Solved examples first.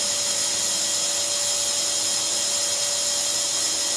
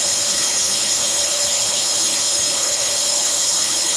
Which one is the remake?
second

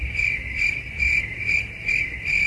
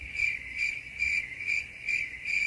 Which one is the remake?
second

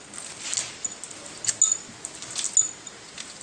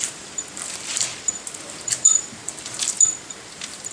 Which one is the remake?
second